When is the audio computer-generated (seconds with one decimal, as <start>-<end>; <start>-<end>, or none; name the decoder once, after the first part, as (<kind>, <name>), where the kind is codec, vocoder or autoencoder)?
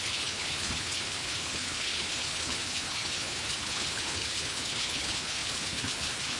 0.0-6.4 (codec, HILCodec)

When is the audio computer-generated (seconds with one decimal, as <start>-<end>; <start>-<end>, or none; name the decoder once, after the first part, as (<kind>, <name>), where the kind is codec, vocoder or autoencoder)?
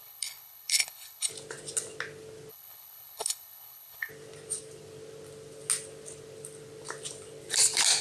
0.0-1.3 (codec, HILCodec); 2.5-4.1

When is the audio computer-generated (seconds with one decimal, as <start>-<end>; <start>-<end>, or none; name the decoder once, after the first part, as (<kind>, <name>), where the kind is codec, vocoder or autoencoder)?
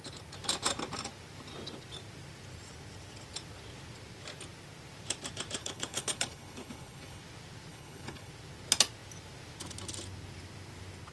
5.6-7.2 (codec, HILCodec); 7.7-8.3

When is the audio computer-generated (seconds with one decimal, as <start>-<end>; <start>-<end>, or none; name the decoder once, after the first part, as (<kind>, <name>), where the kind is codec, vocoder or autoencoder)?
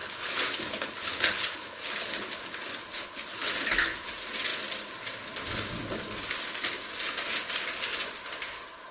0.0-4.1 (codec, HILCodec)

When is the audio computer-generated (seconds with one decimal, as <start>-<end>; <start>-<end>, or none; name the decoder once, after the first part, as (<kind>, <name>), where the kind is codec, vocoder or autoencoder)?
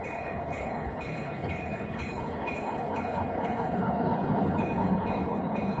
0.0-5.8 (codec, HILCodec)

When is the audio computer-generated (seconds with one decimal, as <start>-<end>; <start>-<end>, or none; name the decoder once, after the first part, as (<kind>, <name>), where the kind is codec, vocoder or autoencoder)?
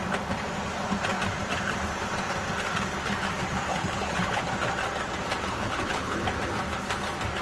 3.7-4.4 (codec, HILCodec); 5.5-6.3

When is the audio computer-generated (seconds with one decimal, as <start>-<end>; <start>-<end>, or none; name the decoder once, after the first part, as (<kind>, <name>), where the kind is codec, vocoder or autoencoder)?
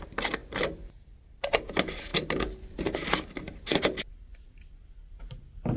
none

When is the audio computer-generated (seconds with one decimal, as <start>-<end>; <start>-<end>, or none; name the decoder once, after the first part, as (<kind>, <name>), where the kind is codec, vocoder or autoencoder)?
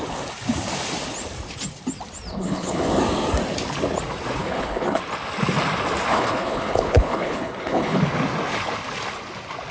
2.3-3.0 (codec, HILCodec); 4.4-5.0; 6.1-8.0